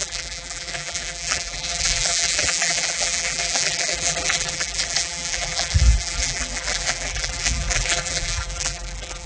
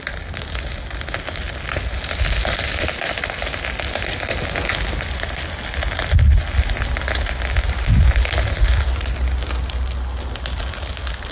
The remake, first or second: first